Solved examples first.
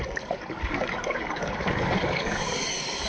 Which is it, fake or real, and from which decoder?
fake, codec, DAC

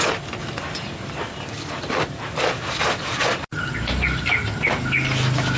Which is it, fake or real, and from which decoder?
real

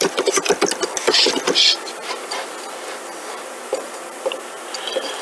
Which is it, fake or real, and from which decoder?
real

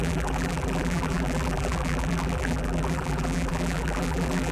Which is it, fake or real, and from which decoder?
fake, vocoder, BigVGAN v2